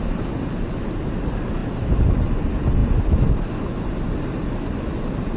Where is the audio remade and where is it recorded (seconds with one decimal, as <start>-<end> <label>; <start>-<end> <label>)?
0.0-5.4 recorded